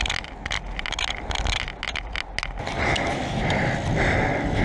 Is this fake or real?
real